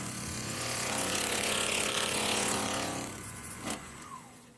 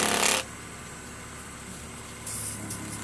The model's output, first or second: first